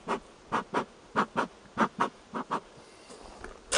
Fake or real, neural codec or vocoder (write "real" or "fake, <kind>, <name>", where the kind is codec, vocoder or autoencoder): real